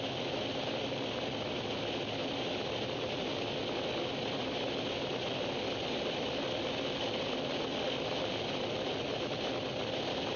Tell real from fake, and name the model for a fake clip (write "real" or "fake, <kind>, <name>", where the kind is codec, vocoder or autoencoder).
real